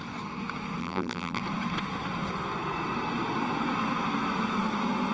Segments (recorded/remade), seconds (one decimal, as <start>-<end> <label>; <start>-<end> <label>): 0.0-0.8 recorded; 0.8-1.4 remade; 1.4-5.1 recorded